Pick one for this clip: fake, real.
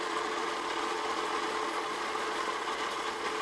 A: fake